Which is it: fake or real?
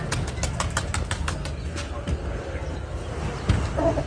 real